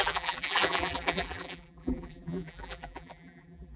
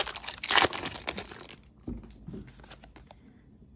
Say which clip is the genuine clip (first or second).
second